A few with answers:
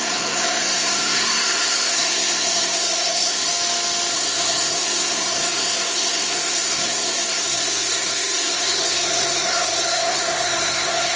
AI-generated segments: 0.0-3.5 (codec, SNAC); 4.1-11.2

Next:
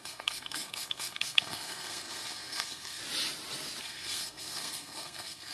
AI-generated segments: 0.0-3.0 (codec, SNAC); 3.8-5.5